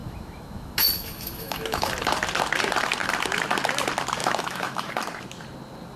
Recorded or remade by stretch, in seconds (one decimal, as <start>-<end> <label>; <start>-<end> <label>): 0.0-1.9 remade; 1.9-4.2 recorded; 4.2-4.9 remade; 4.9-6.0 recorded